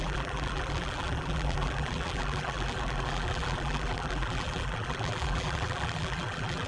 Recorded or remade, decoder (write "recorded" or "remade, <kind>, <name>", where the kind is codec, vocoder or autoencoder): remade, vocoder, BigVGAN v2